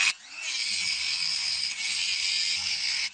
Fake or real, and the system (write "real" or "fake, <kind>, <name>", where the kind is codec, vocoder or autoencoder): real